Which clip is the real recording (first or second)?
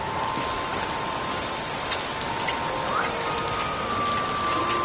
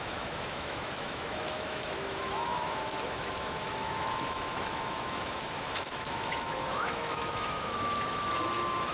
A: first